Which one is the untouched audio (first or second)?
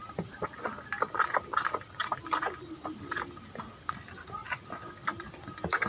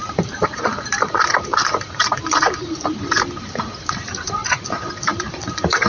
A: first